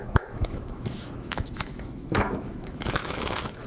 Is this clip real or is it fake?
fake